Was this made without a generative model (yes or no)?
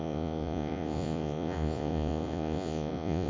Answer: no